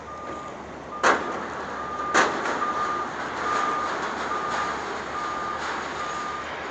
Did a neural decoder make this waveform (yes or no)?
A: no